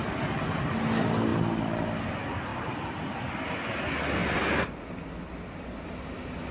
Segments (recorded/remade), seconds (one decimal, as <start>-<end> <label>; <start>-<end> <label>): 0.0-2.5 recorded; 2.5-3.5 remade; 3.5-4.2 recorded; 4.2-4.7 remade; 4.7-6.5 recorded